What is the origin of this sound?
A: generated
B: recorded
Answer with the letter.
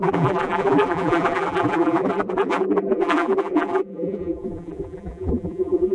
A